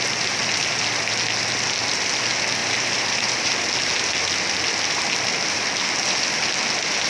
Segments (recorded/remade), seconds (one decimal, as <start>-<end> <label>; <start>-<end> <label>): 0.0-2.6 recorded; 2.6-3.5 remade; 3.5-7.1 recorded

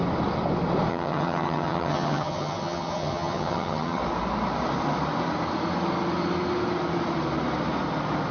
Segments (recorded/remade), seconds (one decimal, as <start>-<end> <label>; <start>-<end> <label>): 0.0-0.9 recorded; 0.9-4.0 remade; 4.0-8.3 recorded